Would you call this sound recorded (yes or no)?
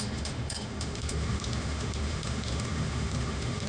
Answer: no